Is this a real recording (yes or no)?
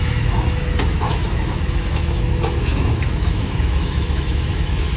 no